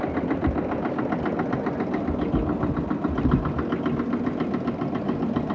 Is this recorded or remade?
recorded